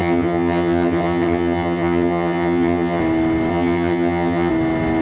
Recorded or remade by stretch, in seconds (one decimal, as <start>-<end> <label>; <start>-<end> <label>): 0.0-3.0 remade; 3.0-3.5 recorded; 3.5-4.5 remade; 4.5-5.0 recorded